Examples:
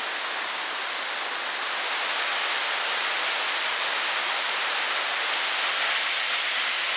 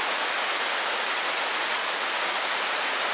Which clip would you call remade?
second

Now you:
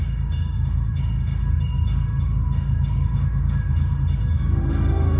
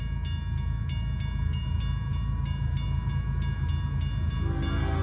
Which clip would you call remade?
first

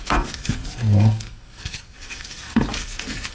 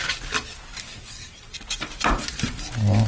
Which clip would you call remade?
first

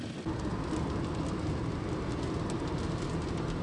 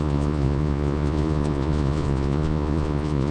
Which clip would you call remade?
second